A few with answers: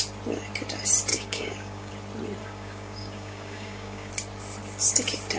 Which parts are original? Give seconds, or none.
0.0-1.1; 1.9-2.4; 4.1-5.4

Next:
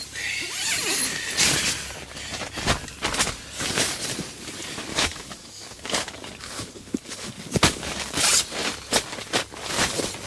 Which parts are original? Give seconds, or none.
0.0-4.9; 8.2-10.3

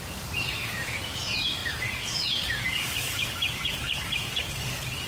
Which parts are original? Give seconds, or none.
none

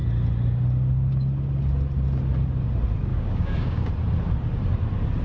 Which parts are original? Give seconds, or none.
0.0-3.1; 3.9-5.2

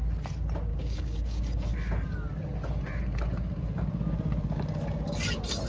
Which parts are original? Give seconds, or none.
0.0-0.7; 1.4-5.7

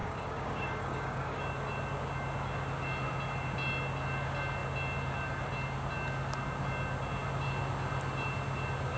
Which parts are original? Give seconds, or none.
1.4-9.0